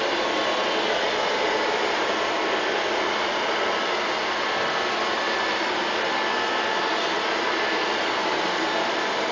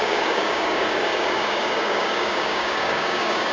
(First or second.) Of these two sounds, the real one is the first